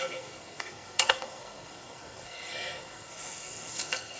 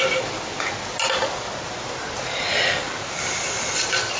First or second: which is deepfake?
first